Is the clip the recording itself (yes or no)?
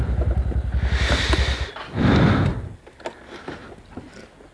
yes